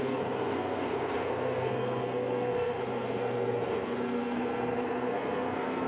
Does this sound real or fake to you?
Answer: fake